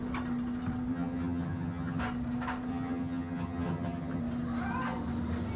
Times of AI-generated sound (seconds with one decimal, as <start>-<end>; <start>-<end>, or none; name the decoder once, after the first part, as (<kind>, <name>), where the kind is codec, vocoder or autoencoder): 0.9-2.0 (vocoder, HiFi-GAN); 2.7-4.2